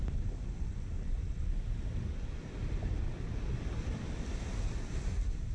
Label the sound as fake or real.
real